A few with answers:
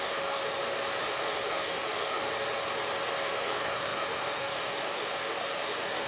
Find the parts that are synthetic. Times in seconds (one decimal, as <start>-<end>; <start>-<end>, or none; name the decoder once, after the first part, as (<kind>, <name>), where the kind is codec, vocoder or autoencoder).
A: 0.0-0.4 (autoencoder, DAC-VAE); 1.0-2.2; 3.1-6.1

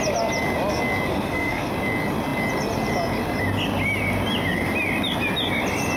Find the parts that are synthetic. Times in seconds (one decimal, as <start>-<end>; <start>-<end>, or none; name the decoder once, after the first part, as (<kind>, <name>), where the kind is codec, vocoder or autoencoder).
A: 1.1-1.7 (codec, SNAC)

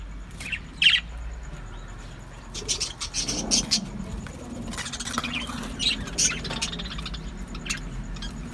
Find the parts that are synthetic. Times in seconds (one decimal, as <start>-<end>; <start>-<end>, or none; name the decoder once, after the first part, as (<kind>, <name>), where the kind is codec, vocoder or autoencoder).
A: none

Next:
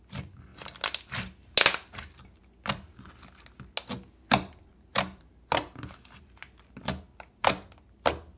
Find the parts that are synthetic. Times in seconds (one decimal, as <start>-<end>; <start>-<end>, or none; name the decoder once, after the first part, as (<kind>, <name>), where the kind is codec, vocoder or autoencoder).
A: none

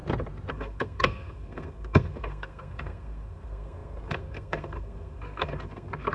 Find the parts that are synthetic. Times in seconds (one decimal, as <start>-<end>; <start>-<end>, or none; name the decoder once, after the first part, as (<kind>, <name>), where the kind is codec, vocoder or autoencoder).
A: 0.5-6.1 (codec, SNAC)

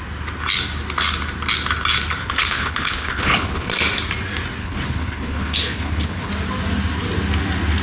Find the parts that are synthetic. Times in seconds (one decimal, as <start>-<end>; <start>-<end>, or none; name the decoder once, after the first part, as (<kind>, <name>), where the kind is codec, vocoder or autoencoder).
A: 2.2-3.7 (codec, HILCodec); 4.6-6.3